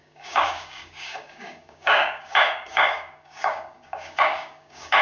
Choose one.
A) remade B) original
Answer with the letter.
A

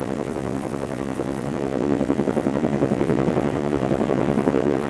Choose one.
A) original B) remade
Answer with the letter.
B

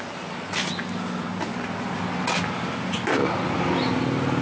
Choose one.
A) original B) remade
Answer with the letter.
A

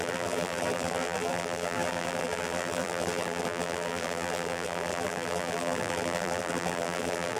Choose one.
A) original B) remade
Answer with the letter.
B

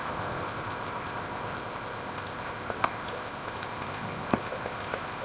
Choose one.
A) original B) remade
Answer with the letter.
B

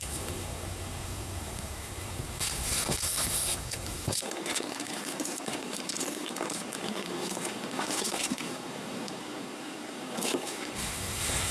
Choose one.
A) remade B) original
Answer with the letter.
A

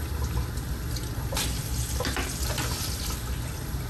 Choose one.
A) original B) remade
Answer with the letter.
A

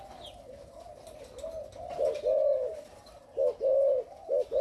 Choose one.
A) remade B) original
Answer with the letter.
B